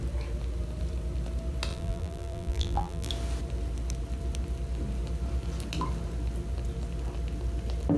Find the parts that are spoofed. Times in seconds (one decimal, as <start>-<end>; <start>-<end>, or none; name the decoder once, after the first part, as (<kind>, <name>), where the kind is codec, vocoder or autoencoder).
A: 1.7-3.1 (vocoder, BigVGAN v2)